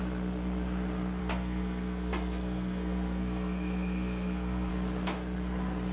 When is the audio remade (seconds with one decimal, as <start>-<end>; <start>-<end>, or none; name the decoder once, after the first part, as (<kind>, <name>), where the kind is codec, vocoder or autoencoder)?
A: 1.2-4.7 (codec, SNAC)